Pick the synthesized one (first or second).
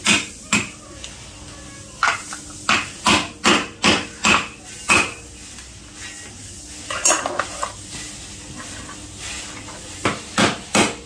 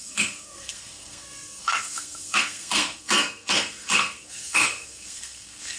second